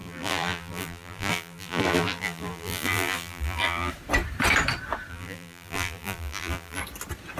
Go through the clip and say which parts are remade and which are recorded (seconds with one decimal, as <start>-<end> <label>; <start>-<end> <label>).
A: 0.0-3.9 remade; 3.9-5.1 recorded; 5.1-6.8 remade; 6.8-7.4 recorded